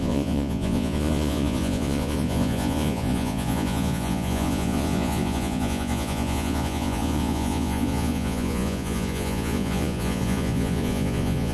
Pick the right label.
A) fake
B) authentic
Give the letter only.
A